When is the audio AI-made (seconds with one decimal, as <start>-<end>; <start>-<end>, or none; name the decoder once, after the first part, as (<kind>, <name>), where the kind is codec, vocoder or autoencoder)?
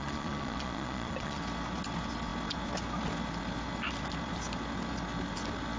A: 0.0-1.4 (vocoder, Vocos)